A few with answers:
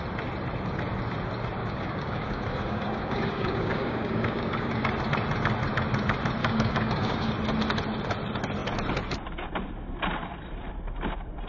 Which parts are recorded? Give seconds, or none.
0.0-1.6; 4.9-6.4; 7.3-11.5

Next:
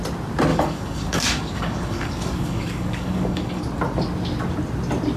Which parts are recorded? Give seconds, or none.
0.0-0.5; 3.6-5.2

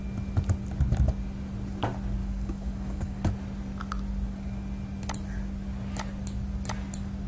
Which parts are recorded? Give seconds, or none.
0.0-2.2; 3.3-7.3

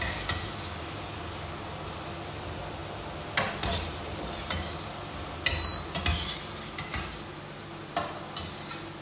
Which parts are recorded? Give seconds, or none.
0.0-9.0

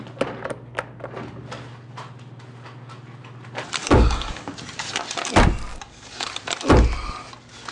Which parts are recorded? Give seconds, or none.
0.0-3.8; 4.5-5.7; 6.3-7.7

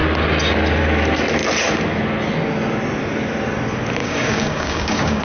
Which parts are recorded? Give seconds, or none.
0.0-4.0

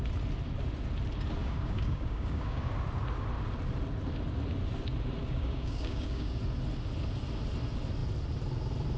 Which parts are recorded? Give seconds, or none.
0.0-1.4; 2.7-5.2; 6.4-9.0

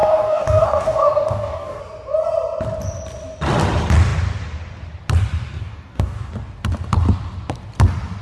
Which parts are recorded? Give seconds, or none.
1.8-5.6; 6.3-8.2